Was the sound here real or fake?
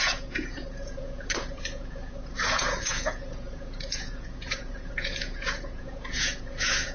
fake